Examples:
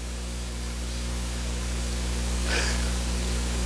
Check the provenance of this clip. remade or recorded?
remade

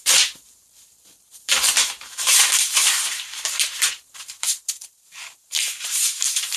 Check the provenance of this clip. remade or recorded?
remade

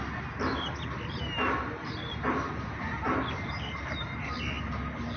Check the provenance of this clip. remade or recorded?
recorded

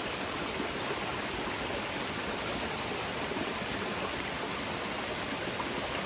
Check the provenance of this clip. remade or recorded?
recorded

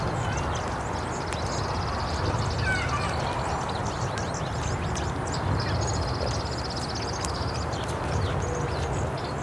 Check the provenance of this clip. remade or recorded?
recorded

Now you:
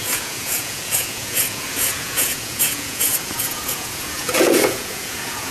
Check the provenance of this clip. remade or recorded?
remade